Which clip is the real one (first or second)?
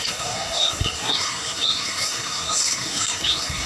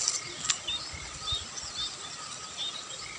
second